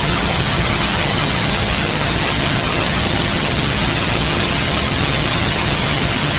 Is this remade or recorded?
remade